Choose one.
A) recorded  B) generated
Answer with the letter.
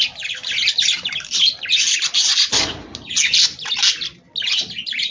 A